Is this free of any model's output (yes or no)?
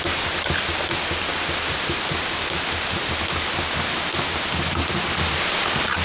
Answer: yes